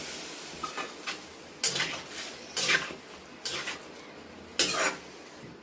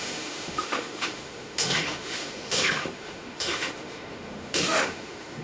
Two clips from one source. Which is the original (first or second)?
first